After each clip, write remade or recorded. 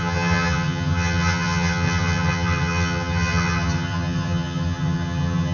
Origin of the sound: remade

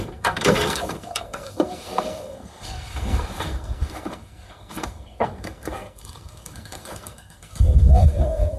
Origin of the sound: remade